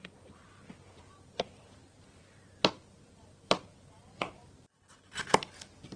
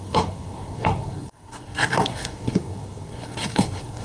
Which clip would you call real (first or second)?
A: first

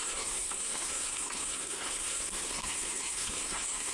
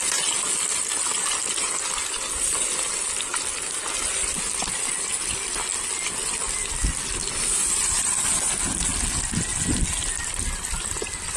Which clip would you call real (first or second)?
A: second